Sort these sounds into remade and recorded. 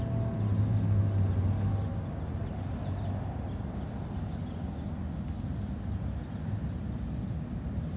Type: recorded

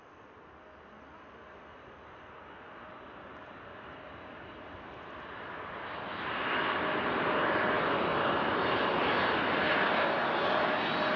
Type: recorded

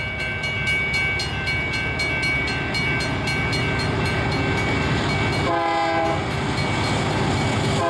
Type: recorded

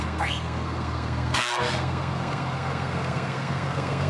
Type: remade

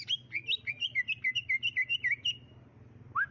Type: recorded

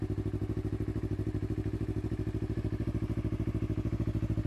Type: recorded